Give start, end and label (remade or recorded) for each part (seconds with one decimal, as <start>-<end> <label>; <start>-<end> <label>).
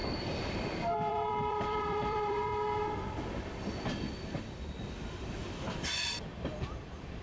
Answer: 0.0-2.5 remade; 2.5-5.1 recorded; 5.1-7.2 remade